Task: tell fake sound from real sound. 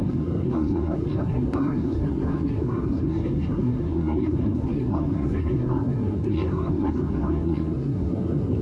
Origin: fake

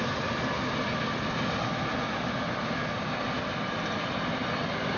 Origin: real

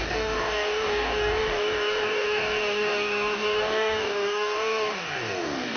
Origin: fake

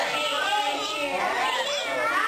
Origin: real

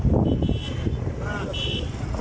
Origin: real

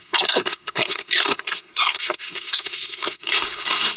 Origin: fake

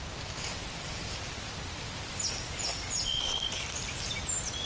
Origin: real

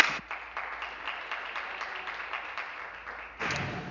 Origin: real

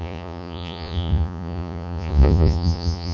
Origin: fake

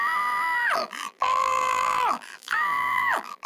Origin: fake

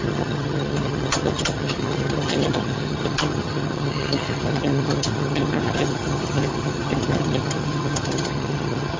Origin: fake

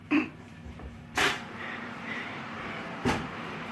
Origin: fake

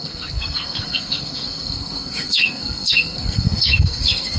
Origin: fake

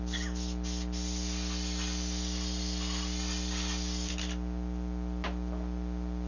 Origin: real